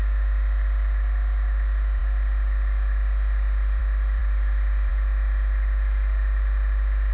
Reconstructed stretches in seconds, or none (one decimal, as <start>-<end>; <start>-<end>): none